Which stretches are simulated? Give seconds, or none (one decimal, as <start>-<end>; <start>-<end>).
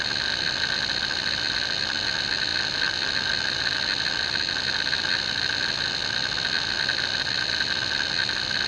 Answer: none